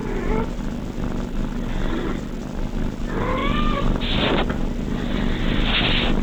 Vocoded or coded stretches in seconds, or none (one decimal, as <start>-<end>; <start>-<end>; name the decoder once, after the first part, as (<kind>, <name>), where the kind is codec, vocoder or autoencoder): none